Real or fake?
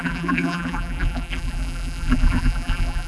fake